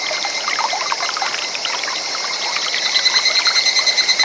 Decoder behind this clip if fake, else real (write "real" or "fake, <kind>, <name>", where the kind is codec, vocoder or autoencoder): real